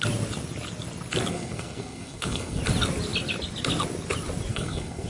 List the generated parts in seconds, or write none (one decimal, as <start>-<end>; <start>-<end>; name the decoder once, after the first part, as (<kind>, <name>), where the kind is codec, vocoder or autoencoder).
1.3-2.6 (codec, SNAC); 4.5-5.1